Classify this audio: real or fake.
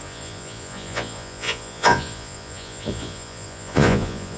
fake